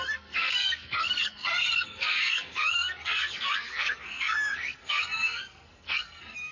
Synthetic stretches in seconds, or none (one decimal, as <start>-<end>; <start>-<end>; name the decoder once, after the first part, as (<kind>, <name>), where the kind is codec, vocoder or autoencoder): 0.0-6.5 (codec, SNAC)